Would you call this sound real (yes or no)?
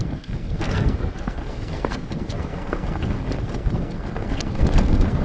no